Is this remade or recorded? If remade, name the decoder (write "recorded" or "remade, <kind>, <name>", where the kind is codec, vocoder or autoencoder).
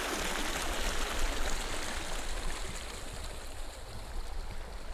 recorded